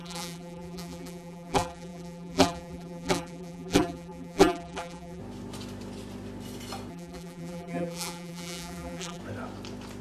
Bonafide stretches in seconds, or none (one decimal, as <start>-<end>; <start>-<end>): 5.2-6.9; 9.2-10.0